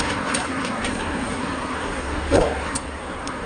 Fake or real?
fake